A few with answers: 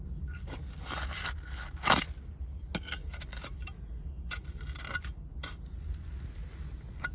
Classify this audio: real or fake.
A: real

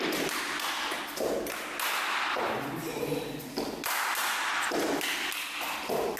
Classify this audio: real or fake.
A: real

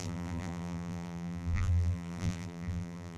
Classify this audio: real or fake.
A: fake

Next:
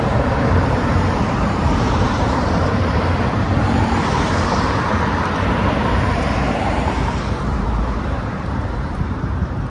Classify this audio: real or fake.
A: fake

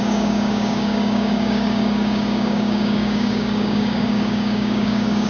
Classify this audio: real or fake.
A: fake